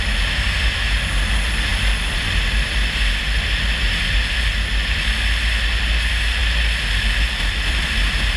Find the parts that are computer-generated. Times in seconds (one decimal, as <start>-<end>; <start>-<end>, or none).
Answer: none

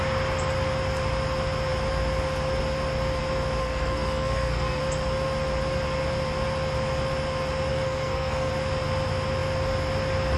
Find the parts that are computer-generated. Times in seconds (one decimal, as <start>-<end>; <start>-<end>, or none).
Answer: 3.6-4.8; 7.7-8.5

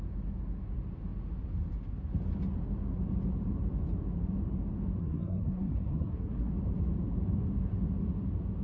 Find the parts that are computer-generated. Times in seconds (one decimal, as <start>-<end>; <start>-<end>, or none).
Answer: 5.0-6.5

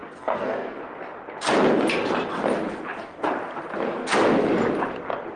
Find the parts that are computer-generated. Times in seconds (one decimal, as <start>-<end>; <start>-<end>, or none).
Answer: 0.0-0.8

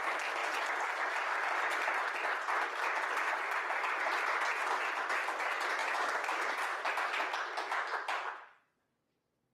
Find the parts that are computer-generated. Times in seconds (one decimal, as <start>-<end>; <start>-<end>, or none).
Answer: none